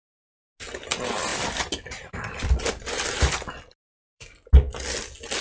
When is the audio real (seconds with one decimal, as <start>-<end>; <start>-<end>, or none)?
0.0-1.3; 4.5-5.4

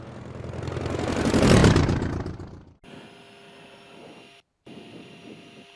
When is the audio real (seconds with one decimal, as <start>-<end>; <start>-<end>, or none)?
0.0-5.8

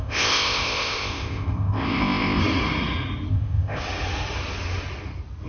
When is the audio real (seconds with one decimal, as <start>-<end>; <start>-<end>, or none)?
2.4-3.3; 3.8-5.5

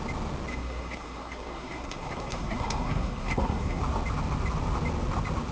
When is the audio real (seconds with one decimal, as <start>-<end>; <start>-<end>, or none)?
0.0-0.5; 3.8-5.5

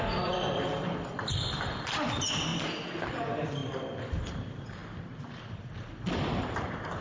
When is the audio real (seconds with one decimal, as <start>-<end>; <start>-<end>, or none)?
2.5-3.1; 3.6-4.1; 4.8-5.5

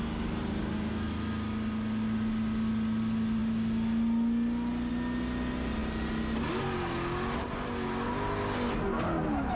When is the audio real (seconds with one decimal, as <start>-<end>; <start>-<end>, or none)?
0.0-9.6

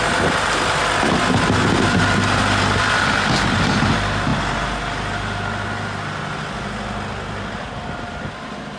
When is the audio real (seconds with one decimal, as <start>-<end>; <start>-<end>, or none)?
0.0-8.8

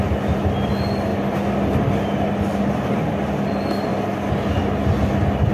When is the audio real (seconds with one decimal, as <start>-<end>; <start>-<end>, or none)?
0.0-5.5